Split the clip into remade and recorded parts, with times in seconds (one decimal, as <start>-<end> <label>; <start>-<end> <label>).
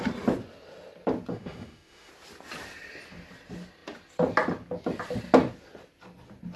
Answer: 0.0-1.3 recorded; 1.3-2.1 remade; 2.1-6.6 recorded